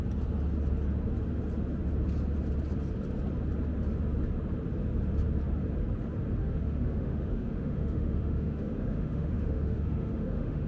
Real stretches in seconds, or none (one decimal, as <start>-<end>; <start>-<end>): 0.0-6.4